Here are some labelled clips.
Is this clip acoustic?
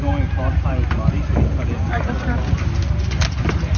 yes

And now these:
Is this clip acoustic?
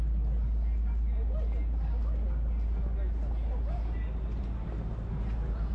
yes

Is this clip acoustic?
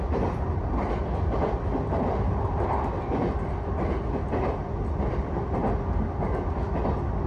yes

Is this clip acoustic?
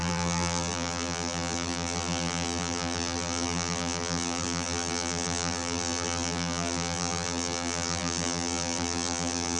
no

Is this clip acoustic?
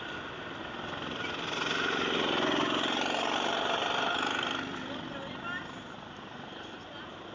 yes